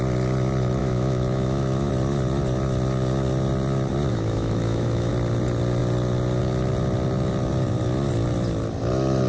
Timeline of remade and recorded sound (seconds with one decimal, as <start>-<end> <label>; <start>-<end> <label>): 0.0-0.8 recorded; 0.8-1.9 remade; 1.9-4.1 recorded; 4.1-5.1 remade; 5.1-9.3 recorded